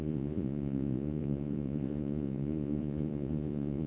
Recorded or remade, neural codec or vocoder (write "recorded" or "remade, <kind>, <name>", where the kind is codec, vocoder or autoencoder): remade, vocoder, Vocos